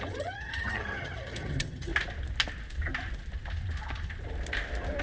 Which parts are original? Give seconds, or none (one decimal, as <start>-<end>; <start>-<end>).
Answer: 1.9-5.0